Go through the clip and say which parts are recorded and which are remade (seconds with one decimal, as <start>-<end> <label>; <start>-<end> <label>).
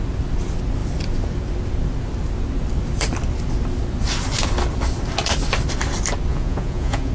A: 0.0-6.3 recorded; 6.3-7.1 remade